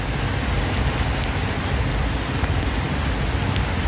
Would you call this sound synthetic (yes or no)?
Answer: no